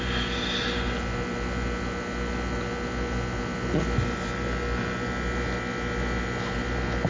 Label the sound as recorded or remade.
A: recorded